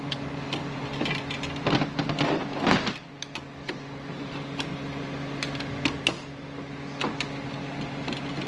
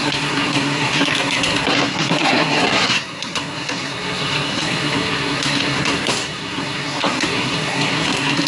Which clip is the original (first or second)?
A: first